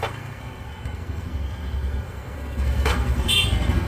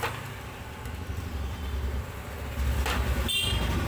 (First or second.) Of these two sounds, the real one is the second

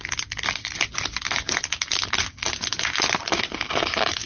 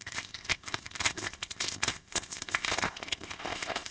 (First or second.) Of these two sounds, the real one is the first